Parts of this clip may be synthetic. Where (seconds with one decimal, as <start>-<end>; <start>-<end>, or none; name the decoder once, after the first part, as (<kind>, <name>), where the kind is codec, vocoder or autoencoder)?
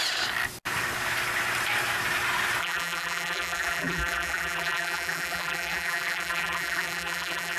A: 2.6-7.6 (vocoder, BigVGAN v2)